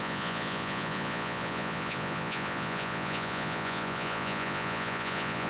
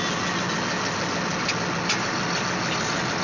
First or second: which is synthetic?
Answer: first